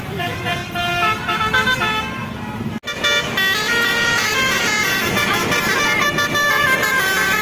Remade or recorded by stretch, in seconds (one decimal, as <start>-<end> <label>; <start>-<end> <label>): 0.0-0.6 remade; 0.6-3.6 recorded; 3.6-5.4 remade; 5.4-6.5 recorded; 6.5-7.4 remade